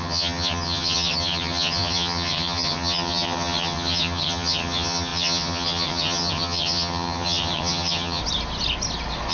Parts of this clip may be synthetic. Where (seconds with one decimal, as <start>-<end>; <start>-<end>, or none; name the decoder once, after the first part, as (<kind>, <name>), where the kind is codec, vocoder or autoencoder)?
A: 0.0-8.2 (vocoder, HiFi-GAN)

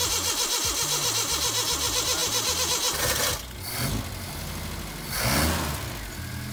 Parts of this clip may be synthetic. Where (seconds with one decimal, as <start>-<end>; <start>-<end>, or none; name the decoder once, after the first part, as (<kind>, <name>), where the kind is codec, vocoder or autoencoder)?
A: none

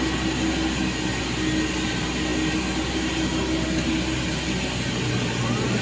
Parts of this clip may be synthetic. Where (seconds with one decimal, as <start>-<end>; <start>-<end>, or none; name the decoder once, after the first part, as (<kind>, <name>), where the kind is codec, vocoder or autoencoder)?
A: none

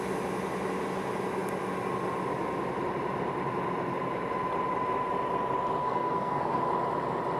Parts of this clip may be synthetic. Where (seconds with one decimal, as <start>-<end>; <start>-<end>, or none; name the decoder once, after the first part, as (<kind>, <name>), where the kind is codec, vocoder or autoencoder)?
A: 5.8-6.6 (codec, SNAC)